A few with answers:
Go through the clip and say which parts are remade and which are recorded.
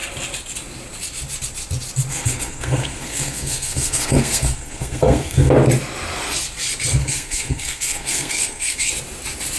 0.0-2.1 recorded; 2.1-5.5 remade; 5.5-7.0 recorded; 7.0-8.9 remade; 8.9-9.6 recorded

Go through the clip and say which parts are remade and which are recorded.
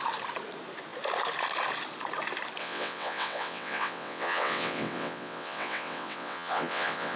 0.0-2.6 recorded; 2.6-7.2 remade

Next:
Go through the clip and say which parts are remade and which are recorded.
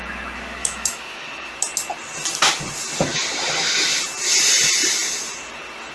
0.0-0.6 recorded; 0.6-1.5 remade; 1.5-5.9 recorded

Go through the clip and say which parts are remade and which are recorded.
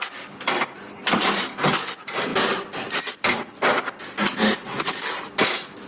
0.0-5.9 recorded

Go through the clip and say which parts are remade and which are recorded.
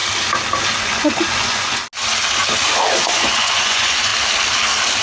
0.0-0.8 recorded; 0.8-1.8 remade; 1.8-2.9 recorded; 2.9-4.1 remade; 4.1-5.0 recorded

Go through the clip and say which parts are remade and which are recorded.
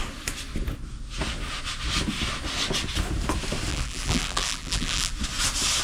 0.0-3.7 recorded; 3.7-5.1 remade; 5.1-5.8 recorded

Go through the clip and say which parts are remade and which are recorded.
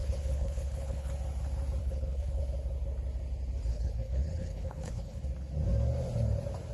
0.0-1.1 remade; 1.1-1.8 recorded; 1.8-2.4 remade; 2.4-3.7 recorded; 3.7-5.2 remade; 5.2-6.7 recorded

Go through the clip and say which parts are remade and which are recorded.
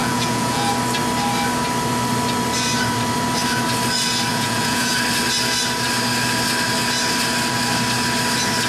0.0-0.7 remade; 0.7-4.3 recorded; 4.3-4.9 remade; 4.9-8.7 recorded